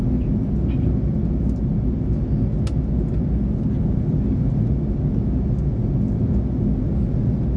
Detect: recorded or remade recorded